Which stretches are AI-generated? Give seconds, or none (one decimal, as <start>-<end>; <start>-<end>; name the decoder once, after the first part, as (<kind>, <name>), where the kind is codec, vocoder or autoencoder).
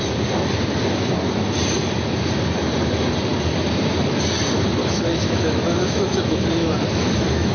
4.8-7.5 (autoencoder, DAC-VAE)